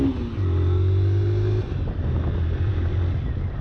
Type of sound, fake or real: real